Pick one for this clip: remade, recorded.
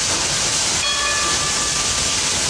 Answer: recorded